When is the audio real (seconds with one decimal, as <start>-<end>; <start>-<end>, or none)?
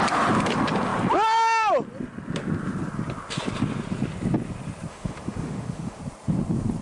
0.0-4.9; 6.0-6.8